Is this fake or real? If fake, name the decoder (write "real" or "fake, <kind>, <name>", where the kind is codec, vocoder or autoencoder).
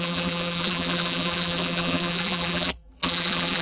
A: fake, vocoder, BigVGAN v2